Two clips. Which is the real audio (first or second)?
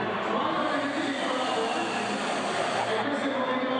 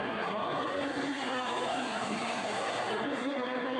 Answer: first